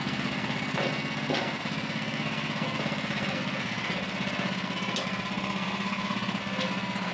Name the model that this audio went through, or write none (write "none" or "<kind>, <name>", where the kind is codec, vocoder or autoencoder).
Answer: codec, SNAC